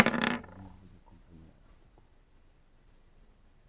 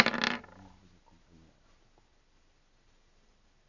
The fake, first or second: first